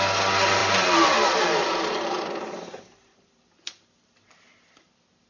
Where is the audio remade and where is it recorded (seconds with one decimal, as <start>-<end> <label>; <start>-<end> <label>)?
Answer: 0.0-0.6 recorded; 0.6-3.4 remade; 3.4-5.3 recorded

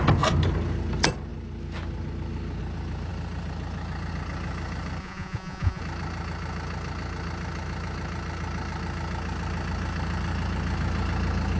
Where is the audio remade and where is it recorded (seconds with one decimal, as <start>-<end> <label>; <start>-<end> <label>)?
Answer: 0.0-5.0 recorded; 5.0-5.8 remade; 5.8-11.6 recorded

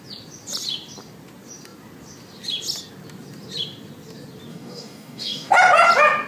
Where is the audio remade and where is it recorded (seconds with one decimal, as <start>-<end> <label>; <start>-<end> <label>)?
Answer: 0.0-4.5 recorded; 4.5-5.5 remade; 5.5-6.3 recorded

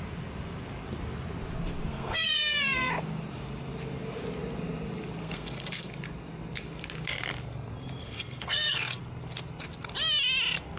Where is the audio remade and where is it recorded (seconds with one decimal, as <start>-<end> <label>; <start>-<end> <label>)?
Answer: 0.0-1.9 recorded; 1.9-2.9 remade; 2.9-5.2 recorded; 5.2-5.9 remade; 5.9-8.0 recorded; 8.0-9.0 remade; 9.0-10.8 recorded

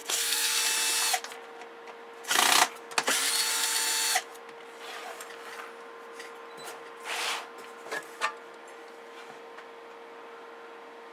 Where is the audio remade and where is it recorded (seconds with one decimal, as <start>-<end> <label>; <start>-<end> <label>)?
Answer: 0.0-0.6 remade; 0.6-11.1 recorded

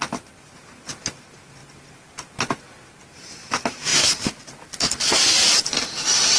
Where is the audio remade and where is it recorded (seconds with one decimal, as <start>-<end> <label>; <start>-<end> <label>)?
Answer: 0.0-6.4 recorded